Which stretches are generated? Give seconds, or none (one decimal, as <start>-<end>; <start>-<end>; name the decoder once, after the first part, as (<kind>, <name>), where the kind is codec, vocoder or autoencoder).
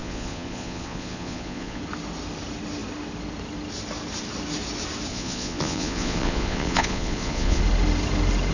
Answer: 0.0-1.8 (vocoder, Vocos); 5.1-7.6